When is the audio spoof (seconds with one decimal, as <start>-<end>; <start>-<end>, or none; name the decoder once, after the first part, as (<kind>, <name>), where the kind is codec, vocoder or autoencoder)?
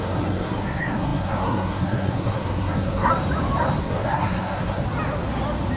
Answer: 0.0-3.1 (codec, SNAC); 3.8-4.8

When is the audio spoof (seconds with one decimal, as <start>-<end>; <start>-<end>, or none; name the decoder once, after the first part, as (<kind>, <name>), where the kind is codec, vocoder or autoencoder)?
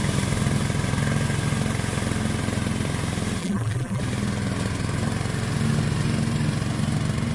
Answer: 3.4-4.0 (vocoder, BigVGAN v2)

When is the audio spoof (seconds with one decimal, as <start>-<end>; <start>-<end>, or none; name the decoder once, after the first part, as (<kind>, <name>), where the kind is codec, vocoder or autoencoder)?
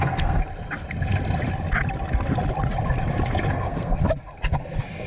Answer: 0.0-0.4 (codec, SNAC); 3.5-4.0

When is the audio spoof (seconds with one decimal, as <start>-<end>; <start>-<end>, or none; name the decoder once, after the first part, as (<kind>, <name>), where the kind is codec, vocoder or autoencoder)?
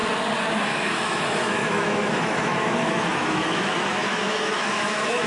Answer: 0.7-5.3 (autoencoder, DAC-VAE)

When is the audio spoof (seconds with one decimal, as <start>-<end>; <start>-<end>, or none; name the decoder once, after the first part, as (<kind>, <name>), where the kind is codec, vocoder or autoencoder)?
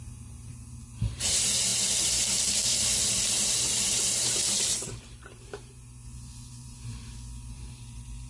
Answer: 0.0-8.3 (vocoder, BigVGAN v2)